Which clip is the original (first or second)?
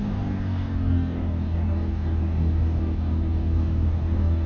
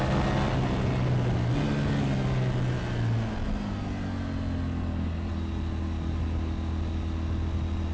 second